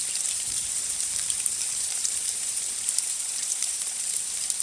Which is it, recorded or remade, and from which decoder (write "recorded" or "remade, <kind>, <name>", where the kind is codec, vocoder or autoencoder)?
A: remade, vocoder, BigVGAN v2